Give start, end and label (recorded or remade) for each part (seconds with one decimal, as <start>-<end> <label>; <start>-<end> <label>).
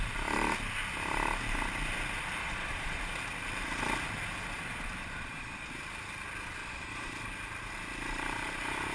0.0-2.4 recorded; 2.4-3.0 remade; 3.0-5.0 recorded; 5.0-5.7 remade; 5.7-6.6 recorded; 6.6-7.1 remade; 7.1-8.9 recorded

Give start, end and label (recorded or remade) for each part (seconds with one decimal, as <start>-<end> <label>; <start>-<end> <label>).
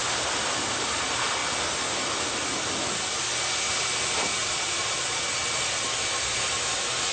0.0-4.4 recorded; 4.4-5.2 remade; 5.2-7.1 recorded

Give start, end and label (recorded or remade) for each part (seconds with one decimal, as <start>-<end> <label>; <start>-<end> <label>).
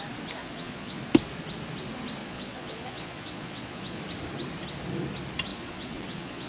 0.0-0.4 recorded; 0.4-1.0 remade; 1.0-2.2 recorded; 2.2-4.0 remade; 4.0-5.5 recorded; 5.5-6.5 remade